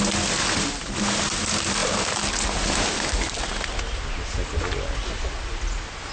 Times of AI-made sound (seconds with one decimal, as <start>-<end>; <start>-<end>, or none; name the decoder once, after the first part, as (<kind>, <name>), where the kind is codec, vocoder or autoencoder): none